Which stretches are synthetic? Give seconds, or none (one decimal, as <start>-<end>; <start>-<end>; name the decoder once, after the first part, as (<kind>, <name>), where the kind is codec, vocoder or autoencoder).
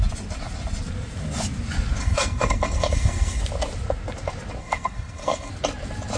2.0-3.4 (codec, SNAC); 4.6-5.5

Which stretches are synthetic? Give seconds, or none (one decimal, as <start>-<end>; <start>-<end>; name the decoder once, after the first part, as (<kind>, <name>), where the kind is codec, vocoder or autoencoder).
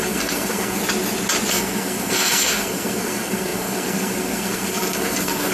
0.0-0.8 (codec, SNAC); 1.5-5.5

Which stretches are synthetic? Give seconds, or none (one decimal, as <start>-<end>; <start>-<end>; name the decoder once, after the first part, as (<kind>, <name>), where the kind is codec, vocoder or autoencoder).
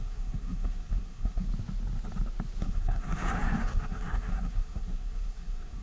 0.0-1.5 (codec, SNAC); 2.6-5.8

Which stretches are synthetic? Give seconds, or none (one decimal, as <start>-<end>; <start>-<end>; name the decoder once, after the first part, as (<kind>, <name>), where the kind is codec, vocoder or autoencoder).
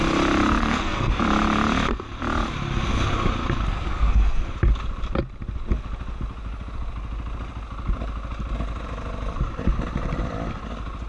0.6-1.2 (codec, SNAC); 3.7-4.4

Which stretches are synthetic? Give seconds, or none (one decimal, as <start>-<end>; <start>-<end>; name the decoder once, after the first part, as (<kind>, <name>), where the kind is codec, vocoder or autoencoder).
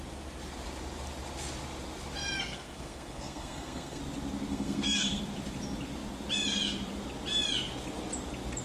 2.5-4.0 (codec, SNAC); 4.5-5.2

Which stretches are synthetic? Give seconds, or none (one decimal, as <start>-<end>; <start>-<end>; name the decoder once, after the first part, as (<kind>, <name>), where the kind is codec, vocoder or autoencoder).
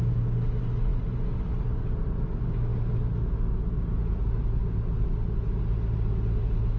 none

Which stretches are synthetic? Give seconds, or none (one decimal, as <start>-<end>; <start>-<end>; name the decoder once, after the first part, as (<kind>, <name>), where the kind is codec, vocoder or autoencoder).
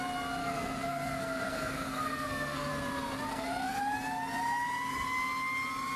0.4-2.7 (codec, SNAC); 3.3-3.8